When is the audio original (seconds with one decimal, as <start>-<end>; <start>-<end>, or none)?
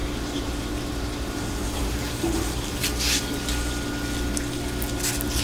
2.9-5.4